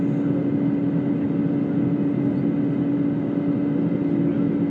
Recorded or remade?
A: recorded